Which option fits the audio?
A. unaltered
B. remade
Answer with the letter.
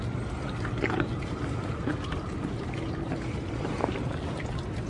A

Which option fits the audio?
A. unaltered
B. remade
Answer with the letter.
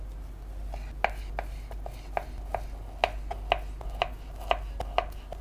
A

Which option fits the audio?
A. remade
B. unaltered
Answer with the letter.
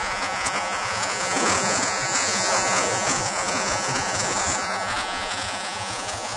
A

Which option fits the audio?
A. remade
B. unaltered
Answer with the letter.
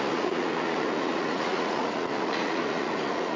A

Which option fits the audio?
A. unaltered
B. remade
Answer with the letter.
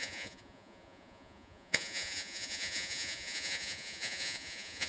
B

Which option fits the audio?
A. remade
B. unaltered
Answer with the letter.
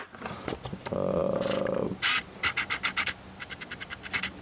B